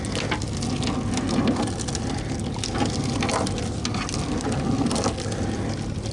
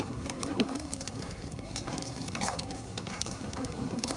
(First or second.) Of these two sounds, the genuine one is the first